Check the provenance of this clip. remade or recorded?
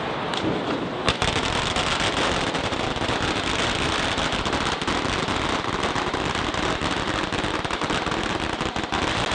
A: recorded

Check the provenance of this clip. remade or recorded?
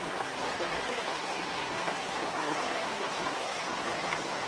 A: remade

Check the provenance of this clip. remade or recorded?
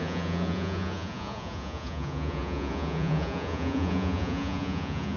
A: remade